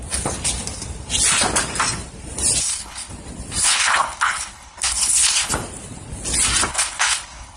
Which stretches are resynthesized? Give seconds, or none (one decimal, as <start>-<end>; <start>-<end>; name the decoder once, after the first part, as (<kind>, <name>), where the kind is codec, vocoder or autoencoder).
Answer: 2.6-3.1 (codec, HILCodec); 3.6-5.5; 6.7-7.6